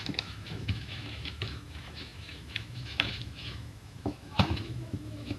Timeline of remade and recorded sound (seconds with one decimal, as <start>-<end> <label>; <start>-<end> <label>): 0.0-5.4 remade